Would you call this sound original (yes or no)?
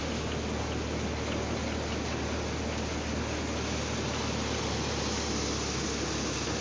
yes